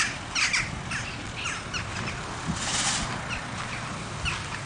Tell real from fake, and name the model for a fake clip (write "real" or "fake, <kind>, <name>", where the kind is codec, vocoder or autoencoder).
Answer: real